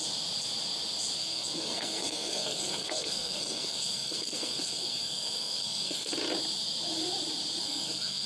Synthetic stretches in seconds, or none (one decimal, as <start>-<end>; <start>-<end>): 1.2-6.1; 7.6-8.3